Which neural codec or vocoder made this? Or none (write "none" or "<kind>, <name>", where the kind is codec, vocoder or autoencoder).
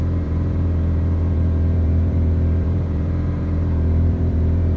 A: vocoder, BigVGAN v2